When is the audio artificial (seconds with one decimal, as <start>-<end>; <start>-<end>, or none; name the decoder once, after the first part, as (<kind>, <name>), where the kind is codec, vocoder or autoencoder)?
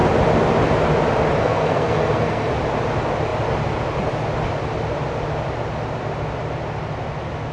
1.4-2.5 (codec, SNAC)